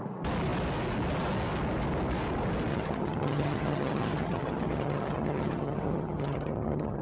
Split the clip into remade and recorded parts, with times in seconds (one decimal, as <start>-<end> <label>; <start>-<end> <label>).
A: 0.0-2.7 recorded; 2.7-7.0 remade